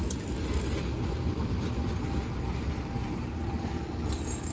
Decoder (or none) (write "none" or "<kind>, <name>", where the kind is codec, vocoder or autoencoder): none